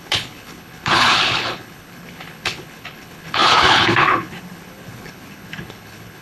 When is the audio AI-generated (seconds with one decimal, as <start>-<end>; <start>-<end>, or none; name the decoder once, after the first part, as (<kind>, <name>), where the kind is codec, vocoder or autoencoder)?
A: 0.0-6.2 (codec, HILCodec)